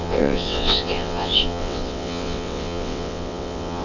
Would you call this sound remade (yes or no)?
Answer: yes